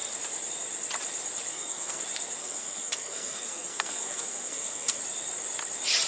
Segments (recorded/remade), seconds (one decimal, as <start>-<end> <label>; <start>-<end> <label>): 0.0-1.5 recorded; 1.5-2.0 remade; 2.0-2.4 recorded; 2.4-5.0 remade; 5.0-6.1 recorded